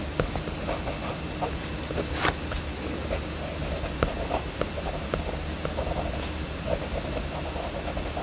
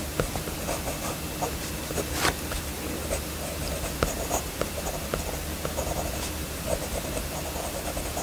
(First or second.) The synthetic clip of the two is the second